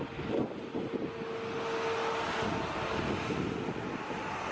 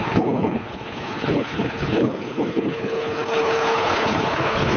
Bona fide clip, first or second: first